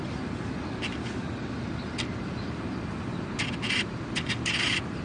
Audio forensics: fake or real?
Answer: real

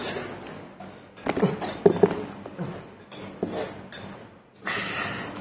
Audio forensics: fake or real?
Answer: real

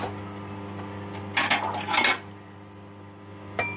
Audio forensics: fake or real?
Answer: real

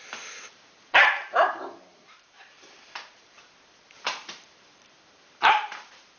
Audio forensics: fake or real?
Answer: fake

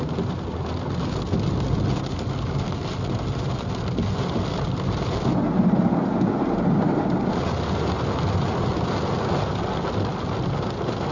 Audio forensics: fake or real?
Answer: real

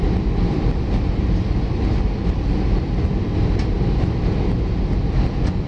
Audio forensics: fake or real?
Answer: real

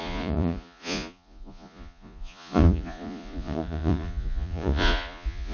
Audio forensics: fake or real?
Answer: fake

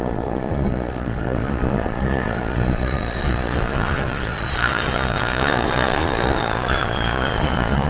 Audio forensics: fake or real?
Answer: fake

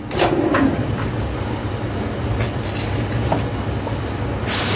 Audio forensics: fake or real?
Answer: real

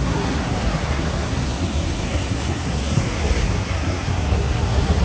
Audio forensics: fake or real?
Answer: fake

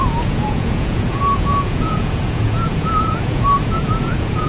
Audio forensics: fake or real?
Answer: fake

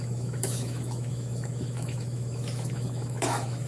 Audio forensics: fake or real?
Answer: fake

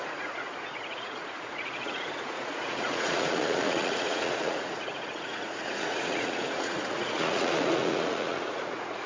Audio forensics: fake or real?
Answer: fake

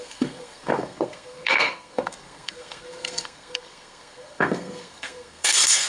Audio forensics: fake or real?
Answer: fake